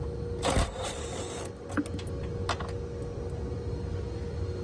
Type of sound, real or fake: real